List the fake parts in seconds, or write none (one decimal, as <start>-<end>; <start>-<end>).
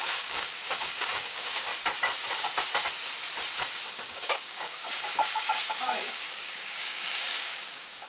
0.0-1.7; 3.9-8.1